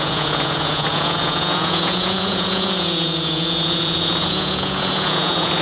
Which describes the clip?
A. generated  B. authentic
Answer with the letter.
A